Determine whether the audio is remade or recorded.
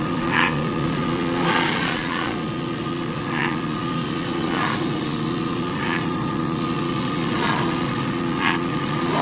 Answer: remade